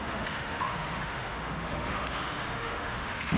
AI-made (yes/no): yes